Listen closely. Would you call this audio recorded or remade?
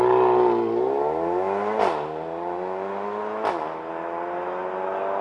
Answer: recorded